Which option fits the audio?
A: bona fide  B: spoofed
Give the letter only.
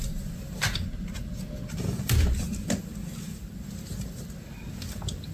A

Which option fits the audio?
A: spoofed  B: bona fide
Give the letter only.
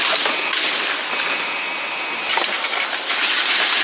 B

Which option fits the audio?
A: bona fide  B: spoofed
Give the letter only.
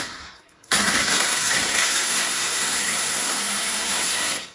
B